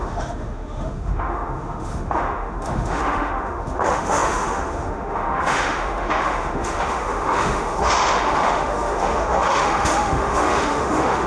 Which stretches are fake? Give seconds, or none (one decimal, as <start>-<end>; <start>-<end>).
0.0-11.3